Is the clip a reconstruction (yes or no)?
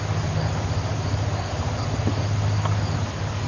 no